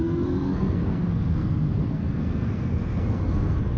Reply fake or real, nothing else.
fake